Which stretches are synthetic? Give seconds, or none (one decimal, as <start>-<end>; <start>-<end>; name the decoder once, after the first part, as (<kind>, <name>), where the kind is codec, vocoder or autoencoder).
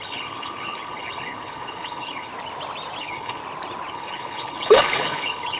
0.0-2.3 (codec, HILCodec); 3.0-3.4; 3.9-5.6